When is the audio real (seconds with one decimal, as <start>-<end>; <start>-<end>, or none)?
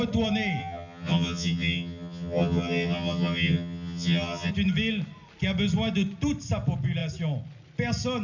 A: 0.0-0.6; 4.5-8.2